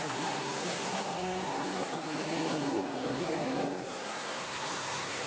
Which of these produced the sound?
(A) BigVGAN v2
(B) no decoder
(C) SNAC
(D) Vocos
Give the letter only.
C